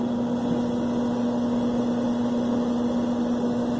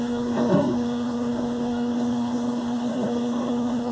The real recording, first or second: first